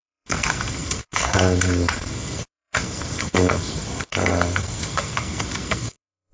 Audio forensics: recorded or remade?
remade